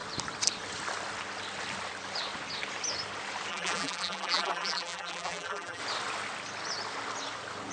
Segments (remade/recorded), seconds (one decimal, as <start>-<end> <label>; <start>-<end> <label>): 0.0-3.5 recorded; 3.5-5.8 remade; 5.8-7.7 recorded